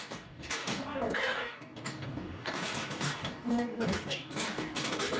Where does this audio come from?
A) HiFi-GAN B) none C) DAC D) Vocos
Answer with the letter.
C